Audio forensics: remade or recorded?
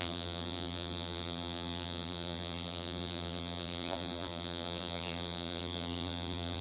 remade